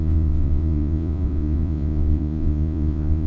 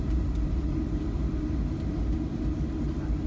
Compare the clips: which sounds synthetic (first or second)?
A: first